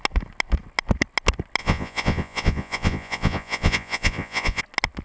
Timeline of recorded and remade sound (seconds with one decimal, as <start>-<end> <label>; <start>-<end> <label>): 0.0-1.6 recorded; 1.6-4.6 remade; 4.6-5.0 recorded